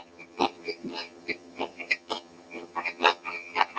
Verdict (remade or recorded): remade